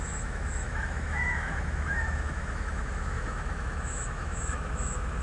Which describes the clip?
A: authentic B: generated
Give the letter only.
B